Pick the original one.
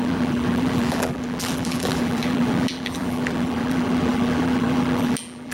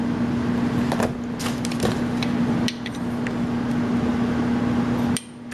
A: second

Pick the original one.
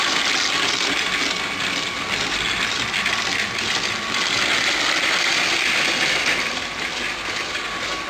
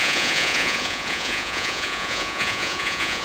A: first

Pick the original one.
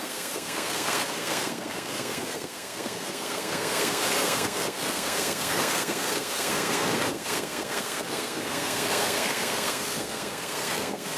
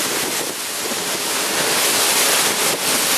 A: second